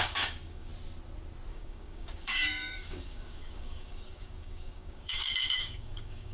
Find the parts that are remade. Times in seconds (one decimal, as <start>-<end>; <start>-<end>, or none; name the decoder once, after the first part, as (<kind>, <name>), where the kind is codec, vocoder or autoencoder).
0.0-0.7 (codec, DAC); 1.5-6.3